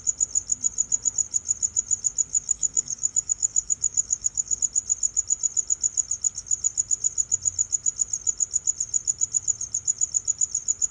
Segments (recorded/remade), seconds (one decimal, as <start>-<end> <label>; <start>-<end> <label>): 0.0-2.3 recorded; 2.3-4.6 remade; 4.6-10.9 recorded